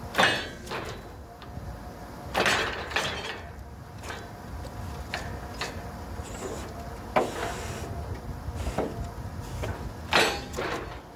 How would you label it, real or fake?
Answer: real